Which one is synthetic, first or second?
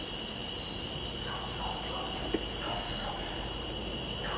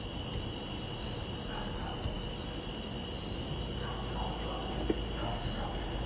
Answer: first